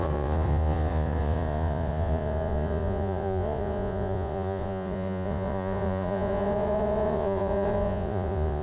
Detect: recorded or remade remade